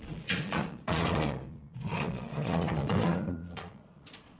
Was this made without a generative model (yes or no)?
no